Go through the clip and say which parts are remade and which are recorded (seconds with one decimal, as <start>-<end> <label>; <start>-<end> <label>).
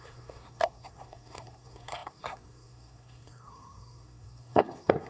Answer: 0.0-5.1 remade